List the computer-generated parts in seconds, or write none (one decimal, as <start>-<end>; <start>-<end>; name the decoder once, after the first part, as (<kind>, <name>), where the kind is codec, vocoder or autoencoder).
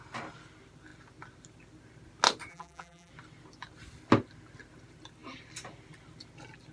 2.5-3.1 (vocoder, BigVGAN v2)